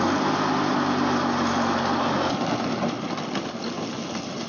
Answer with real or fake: real